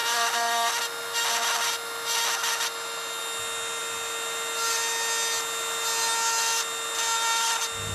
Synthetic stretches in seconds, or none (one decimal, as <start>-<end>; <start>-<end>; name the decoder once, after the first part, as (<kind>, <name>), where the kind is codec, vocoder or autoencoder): 0.0-0.8 (vocoder, BigVGAN v2)